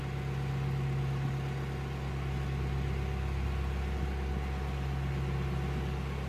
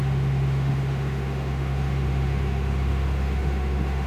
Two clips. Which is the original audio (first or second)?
first